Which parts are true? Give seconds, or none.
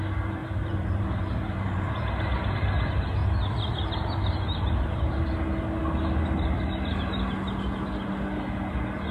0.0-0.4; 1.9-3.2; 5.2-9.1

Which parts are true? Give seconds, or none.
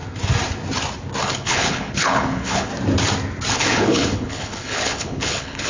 0.0-1.2; 2.7-3.5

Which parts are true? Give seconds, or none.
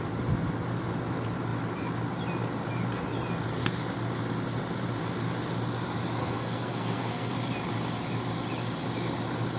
0.0-6.2; 7.3-9.6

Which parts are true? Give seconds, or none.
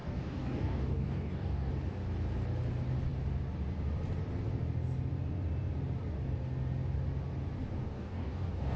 1.7-7.8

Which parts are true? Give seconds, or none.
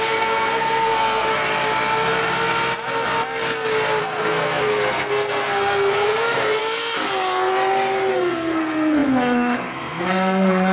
1.3-4.0; 6.6-8.1